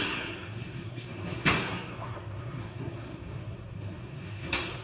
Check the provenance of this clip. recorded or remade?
remade